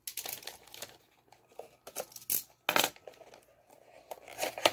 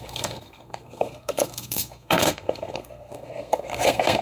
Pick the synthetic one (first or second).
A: second